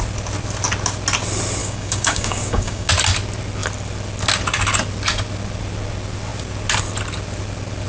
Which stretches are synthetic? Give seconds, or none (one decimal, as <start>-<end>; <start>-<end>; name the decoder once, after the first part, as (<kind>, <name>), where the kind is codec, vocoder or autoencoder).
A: 1.6-2.9 (codec, DAC)